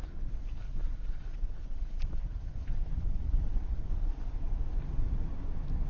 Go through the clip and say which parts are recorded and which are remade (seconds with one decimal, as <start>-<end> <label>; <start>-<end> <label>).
0.0-0.7 recorded; 0.7-4.2 remade; 4.2-5.9 recorded